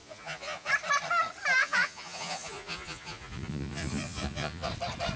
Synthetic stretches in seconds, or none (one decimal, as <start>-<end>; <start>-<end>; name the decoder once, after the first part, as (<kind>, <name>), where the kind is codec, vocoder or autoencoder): 0.0-0.7 (vocoder, Vocos); 1.6-4.7